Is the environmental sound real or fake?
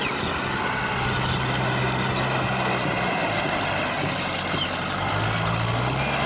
real